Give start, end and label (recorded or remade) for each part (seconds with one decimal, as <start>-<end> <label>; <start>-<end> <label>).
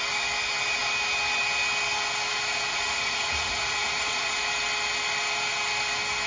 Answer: 0.0-2.7 recorded; 2.7-4.4 remade; 4.4-6.3 recorded